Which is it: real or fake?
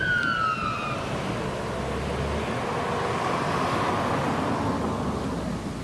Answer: real